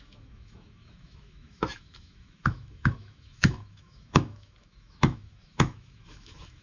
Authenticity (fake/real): fake